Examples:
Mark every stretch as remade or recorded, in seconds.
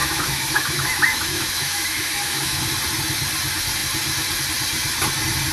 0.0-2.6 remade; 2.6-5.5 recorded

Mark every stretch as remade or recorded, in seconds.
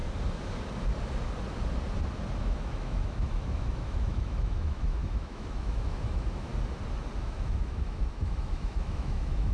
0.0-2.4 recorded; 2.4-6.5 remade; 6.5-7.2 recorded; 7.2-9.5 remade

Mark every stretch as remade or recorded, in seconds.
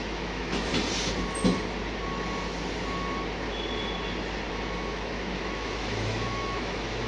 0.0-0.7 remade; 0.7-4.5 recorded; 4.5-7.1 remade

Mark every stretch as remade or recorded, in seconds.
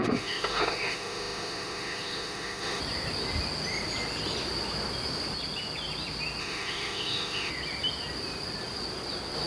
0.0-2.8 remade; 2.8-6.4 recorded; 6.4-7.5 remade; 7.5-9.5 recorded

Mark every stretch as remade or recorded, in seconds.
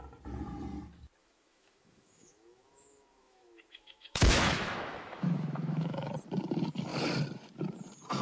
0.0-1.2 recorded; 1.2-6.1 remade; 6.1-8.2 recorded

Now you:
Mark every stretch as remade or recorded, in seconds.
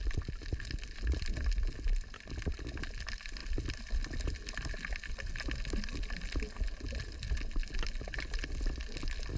0.0-9.4 recorded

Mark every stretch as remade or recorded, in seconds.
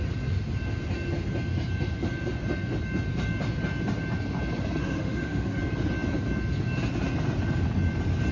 0.0-4.8 recorded; 4.8-5.6 remade; 5.6-8.3 recorded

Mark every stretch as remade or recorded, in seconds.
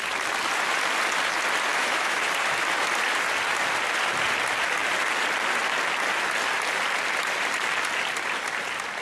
0.0-1.7 recorded; 1.7-2.2 remade; 2.2-9.0 recorded